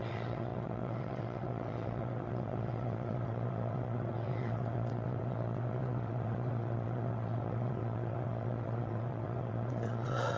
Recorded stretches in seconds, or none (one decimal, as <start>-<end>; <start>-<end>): none